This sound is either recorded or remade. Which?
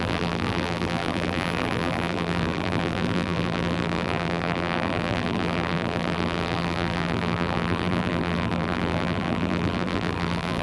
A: remade